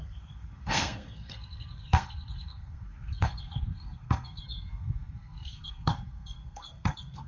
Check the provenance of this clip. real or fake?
fake